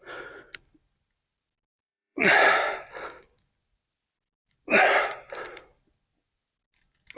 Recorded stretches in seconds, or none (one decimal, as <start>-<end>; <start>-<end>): 0.0-1.7; 2.3-7.2